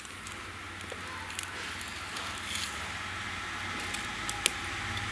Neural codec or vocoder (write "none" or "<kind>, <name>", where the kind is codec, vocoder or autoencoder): none